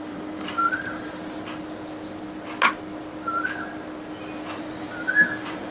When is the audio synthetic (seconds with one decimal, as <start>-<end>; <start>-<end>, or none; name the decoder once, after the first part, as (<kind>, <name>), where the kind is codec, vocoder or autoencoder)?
0.0-1.2 (vocoder, BigVGAN v2); 4.6-5.7